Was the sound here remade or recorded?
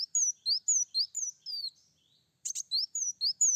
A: recorded